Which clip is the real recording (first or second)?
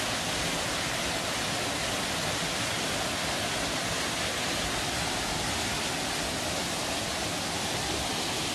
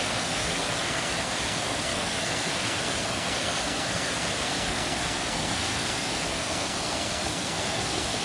first